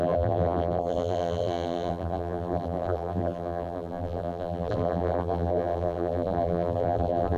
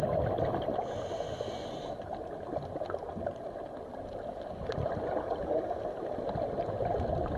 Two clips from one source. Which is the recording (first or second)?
second